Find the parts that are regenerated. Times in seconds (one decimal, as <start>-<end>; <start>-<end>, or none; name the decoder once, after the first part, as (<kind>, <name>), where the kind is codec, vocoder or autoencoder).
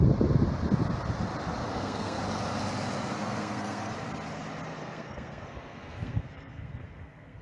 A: 1.7-2.2 (codec, SNAC); 3.1-3.9; 4.8-7.4